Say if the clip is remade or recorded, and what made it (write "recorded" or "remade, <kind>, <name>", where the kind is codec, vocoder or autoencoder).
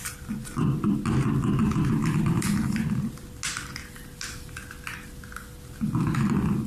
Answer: recorded